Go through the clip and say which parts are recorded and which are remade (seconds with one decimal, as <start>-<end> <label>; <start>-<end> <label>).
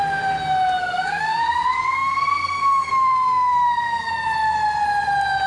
0.0-0.8 recorded; 0.8-4.1 remade; 4.1-5.5 recorded